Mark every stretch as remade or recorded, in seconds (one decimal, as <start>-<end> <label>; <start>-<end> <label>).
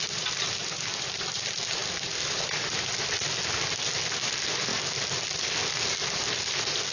0.0-6.9 recorded